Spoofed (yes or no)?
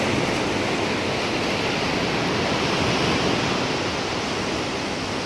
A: no